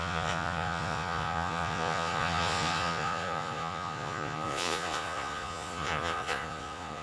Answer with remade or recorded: remade